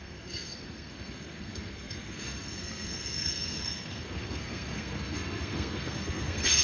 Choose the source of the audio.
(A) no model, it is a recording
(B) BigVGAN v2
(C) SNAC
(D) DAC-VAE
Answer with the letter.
C